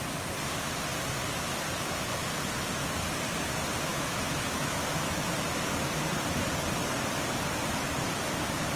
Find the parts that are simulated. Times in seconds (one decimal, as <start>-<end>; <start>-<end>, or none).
3.9-5.3